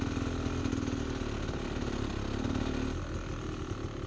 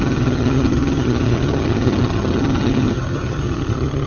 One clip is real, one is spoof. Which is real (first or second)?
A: first